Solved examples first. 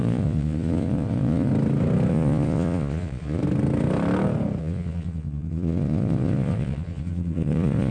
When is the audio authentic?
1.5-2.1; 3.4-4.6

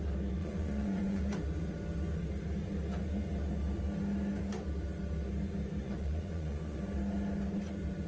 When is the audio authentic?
0.0-0.4; 1.2-5.8; 6.8-8.1

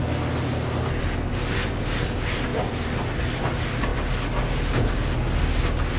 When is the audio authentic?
0.0-6.0

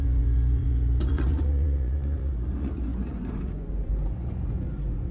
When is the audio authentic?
none

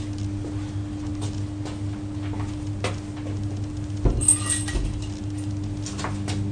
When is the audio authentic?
0.0-6.5

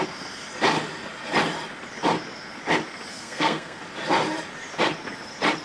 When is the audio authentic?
0.0-3.1; 3.8-5.6